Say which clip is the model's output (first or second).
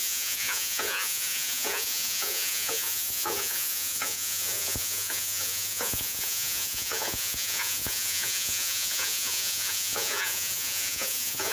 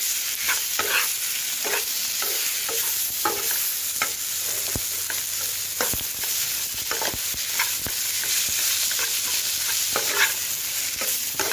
first